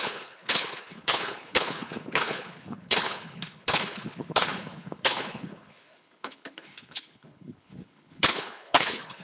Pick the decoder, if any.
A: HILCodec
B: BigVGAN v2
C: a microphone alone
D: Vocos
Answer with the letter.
A